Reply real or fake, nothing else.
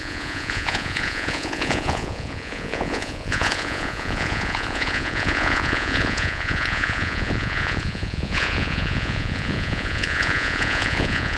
fake